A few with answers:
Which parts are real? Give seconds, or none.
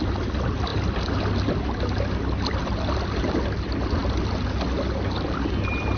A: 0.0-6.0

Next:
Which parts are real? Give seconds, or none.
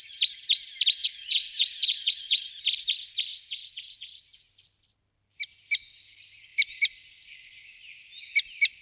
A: 0.0-1.0; 2.5-3.3; 4.5-8.8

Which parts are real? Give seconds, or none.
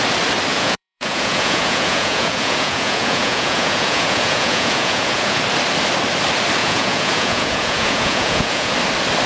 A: 0.0-0.5; 5.4-6.6; 8.7-9.3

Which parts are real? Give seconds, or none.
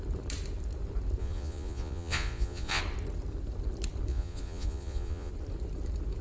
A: 0.0-1.2; 2.8-4.1; 5.3-6.2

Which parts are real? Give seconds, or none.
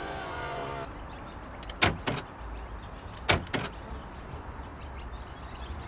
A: 0.6-4.1; 4.7-5.3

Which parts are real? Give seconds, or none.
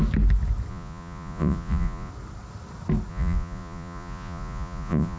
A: 0.0-0.7; 2.1-3.1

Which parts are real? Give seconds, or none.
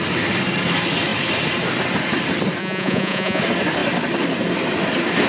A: 0.0-2.6; 3.4-5.3